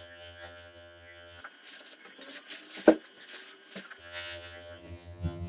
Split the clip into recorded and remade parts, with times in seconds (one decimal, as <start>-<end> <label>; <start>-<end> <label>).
0.0-1.4 remade; 1.4-4.0 recorded; 4.0-5.5 remade